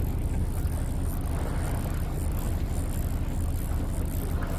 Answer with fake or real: real